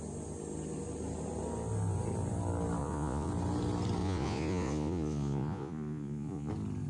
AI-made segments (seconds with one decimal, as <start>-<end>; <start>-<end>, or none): 2.8-3.3; 4.0-6.5